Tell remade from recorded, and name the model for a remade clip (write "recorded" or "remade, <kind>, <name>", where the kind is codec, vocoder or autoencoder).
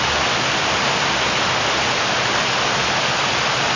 recorded